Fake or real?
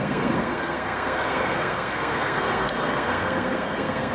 fake